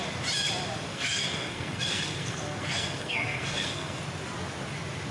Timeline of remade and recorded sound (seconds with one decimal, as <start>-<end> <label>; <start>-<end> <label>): 0.0-0.9 recorded; 0.9-4.0 remade; 4.0-5.1 recorded